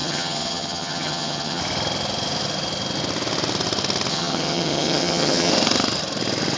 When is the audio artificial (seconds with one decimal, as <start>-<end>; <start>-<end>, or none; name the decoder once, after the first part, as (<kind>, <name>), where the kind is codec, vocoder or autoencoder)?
0.0-1.6 (vocoder, HiFi-GAN); 4.1-5.5